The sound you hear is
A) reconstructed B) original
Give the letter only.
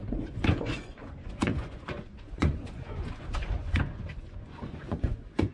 A